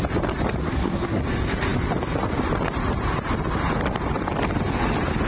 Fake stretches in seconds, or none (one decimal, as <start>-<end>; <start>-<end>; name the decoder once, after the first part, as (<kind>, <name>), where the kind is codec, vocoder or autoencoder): 0.6-1.2 (codec, SNAC)